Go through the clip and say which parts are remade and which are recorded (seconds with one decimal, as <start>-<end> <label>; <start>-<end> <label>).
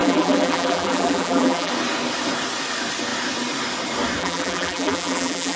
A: 0.0-1.7 remade; 1.7-4.2 recorded; 4.2-5.6 remade